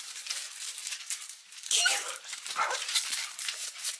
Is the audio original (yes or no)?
no